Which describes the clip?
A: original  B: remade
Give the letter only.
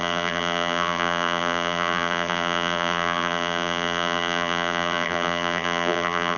B